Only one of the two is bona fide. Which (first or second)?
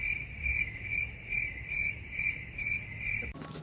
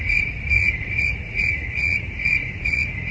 first